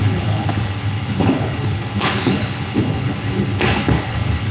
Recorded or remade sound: remade